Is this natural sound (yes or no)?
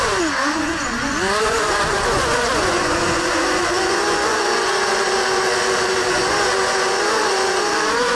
no